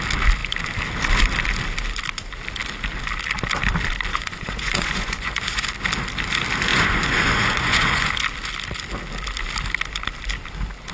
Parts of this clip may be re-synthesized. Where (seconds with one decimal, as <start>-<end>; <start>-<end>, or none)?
4.1-5.7; 6.7-8.1